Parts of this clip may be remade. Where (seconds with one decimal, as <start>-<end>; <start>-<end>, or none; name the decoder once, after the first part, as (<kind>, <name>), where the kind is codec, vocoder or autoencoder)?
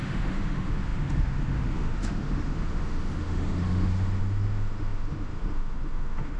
0.0-6.4 (autoencoder, DAC-VAE)